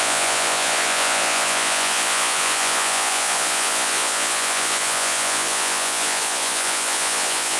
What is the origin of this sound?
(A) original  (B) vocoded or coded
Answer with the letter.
B